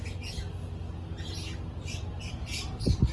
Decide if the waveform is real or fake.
real